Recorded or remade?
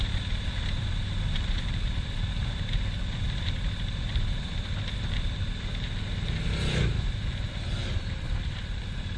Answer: recorded